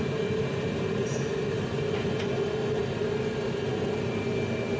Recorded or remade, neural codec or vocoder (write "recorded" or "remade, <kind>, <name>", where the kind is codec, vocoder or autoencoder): recorded